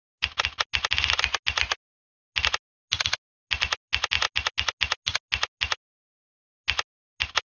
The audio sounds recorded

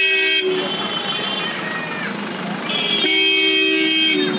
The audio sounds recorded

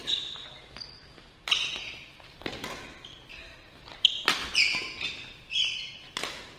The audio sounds remade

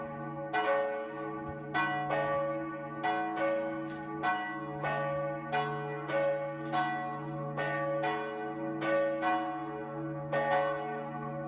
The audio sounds recorded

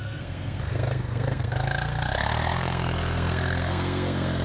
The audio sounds remade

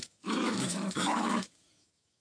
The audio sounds remade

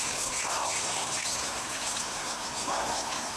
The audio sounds remade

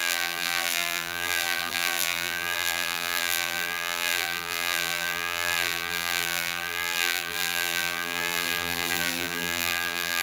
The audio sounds remade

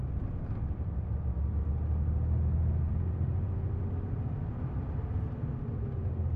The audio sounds recorded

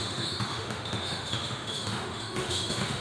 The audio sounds remade